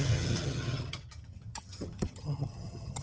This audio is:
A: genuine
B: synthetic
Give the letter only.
B